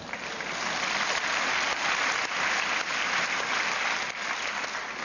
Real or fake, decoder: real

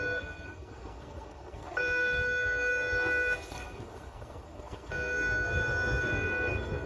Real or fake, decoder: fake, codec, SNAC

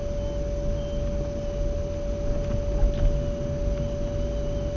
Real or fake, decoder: real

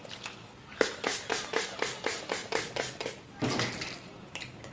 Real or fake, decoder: real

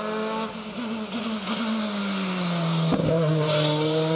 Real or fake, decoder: real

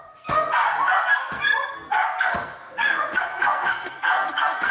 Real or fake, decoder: fake, codec, SNAC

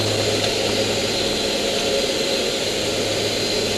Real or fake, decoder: real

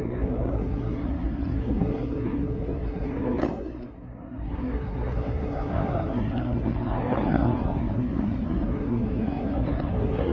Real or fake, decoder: fake, codec, SNAC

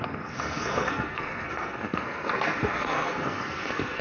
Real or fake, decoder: fake, codec, SNAC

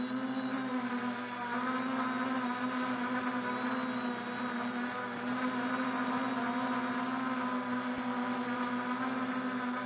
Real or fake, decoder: real